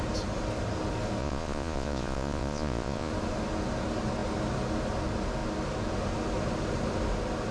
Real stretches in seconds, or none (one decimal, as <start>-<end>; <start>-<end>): 0.0-1.2; 3.1-7.5